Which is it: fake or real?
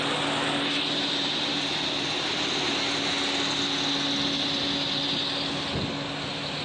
real